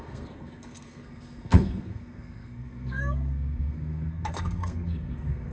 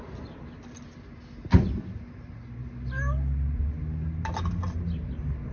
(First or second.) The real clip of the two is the second